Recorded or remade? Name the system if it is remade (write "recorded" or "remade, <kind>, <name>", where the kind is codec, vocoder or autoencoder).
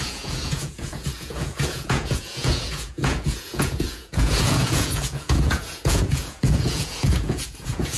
remade, vocoder, Vocos